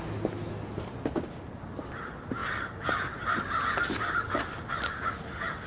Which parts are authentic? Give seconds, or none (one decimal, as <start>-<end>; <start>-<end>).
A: 0.0-5.7